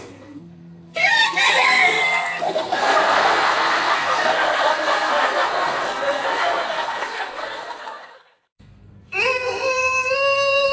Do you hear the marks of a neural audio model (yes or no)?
yes